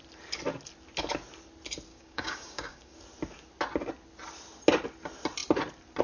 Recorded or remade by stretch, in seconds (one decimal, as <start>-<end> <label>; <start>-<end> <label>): 0.0-1.9 recorded; 1.9-3.0 remade; 3.0-6.0 recorded